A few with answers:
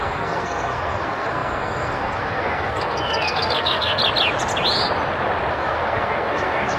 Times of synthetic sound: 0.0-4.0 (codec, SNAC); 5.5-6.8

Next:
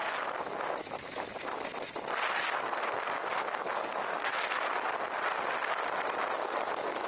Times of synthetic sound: 0.5-1.3 (autoencoder, DAC-VAE); 3.9-4.3; 6.3-7.1

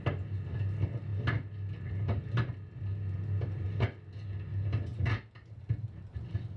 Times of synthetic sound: none

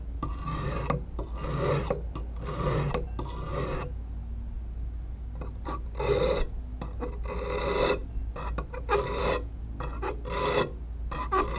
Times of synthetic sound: none